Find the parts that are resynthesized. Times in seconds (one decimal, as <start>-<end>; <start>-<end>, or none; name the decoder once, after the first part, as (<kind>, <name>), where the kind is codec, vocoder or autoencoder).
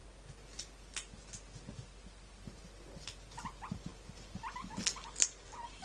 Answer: none